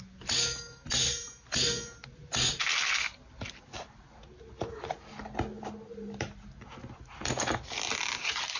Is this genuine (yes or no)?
yes